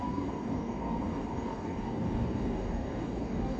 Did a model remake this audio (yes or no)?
yes